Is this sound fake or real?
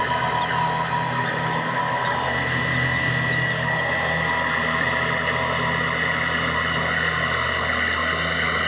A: real